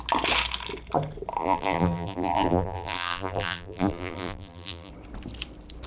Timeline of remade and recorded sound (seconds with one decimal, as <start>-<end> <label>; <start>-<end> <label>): 0.0-1.4 recorded; 1.4-4.9 remade; 4.9-5.9 recorded